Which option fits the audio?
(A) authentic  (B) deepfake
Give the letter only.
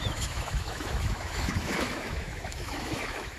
B